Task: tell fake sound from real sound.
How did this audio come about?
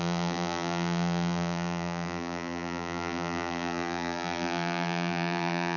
fake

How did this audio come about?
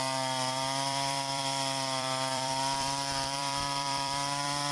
fake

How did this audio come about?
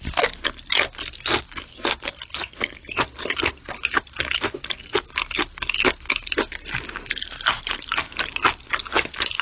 real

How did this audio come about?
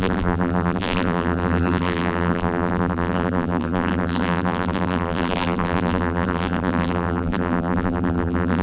fake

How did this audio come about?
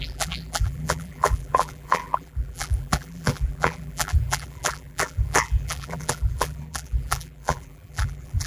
fake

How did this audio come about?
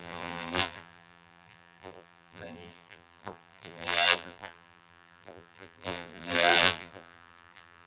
fake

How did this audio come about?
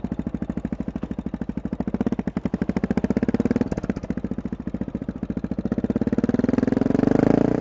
real